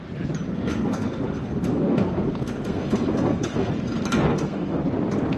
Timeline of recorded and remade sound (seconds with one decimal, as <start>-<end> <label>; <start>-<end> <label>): 0.0-0.5 recorded; 0.5-3.7 remade; 3.7-4.3 recorded; 4.3-4.8 remade; 4.8-5.4 recorded